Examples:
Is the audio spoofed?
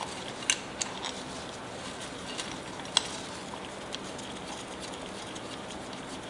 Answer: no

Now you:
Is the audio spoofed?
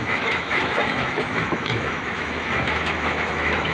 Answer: yes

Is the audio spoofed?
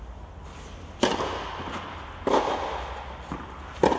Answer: no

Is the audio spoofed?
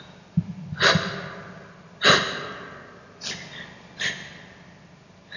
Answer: no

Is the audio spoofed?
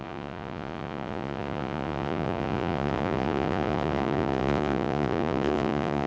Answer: yes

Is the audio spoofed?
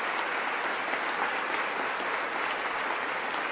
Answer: no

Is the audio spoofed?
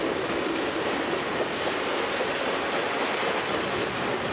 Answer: no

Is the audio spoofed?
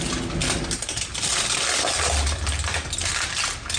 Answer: no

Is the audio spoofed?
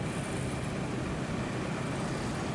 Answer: no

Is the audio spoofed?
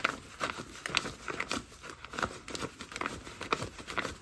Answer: no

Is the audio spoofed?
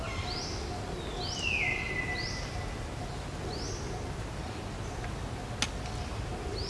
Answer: no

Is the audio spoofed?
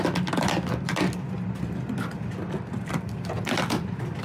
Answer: no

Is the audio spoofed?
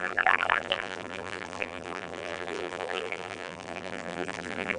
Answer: yes